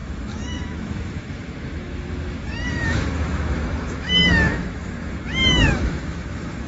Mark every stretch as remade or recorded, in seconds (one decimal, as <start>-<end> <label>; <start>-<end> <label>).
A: 0.0-6.7 remade